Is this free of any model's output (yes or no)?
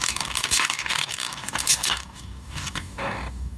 no